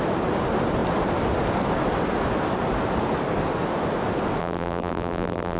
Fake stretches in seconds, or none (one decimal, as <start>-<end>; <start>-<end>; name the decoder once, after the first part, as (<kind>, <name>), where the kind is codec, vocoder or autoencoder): 4.4-5.6 (vocoder, BigVGAN v2)